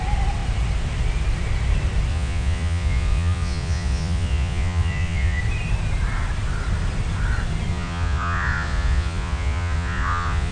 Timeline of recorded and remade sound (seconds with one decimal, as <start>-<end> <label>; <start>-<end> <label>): 0.0-2.1 recorded; 2.1-5.4 remade; 5.4-7.7 recorded; 7.7-10.5 remade